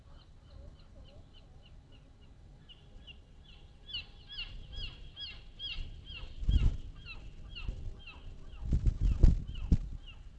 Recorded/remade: recorded